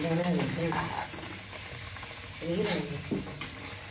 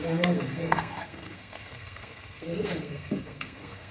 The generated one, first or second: second